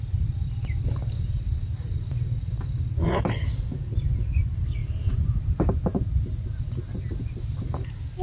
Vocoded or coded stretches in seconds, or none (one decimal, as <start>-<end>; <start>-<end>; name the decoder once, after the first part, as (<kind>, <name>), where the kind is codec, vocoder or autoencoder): none